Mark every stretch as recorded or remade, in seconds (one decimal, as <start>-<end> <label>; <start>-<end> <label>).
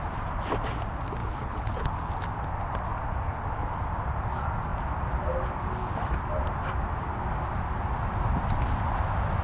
0.0-1.2 recorded; 1.2-1.9 remade; 1.9-9.4 recorded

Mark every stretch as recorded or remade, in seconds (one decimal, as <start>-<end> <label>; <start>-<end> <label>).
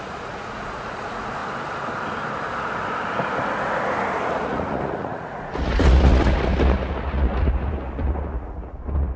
0.0-1.4 remade; 1.4-4.3 recorded; 4.3-9.2 remade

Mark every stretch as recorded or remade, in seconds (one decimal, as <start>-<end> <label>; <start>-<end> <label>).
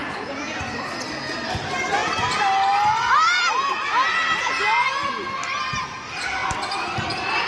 0.0-0.6 remade; 0.6-7.5 recorded